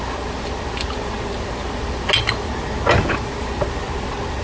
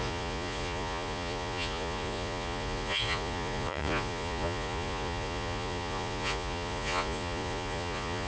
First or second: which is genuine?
first